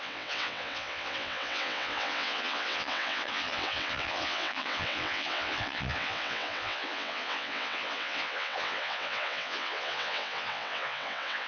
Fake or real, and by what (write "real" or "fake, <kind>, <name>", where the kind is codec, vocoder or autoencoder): fake, vocoder, WaveNeXt